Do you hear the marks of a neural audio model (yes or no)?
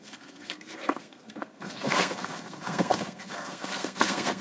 yes